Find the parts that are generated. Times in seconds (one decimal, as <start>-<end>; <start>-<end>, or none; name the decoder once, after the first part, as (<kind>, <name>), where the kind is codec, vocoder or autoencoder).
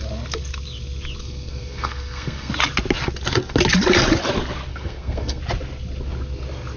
1.2-2.5 (codec, SNAC); 4.7-5.4